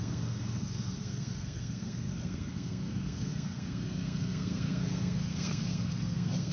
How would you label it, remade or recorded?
remade